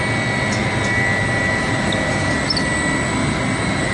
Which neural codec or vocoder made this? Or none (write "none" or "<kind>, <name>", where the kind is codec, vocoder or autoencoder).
none